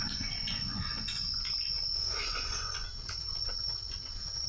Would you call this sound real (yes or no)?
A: no